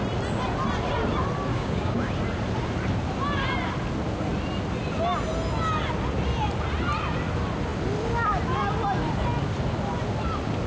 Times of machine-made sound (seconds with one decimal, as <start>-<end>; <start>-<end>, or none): 1.5-2.1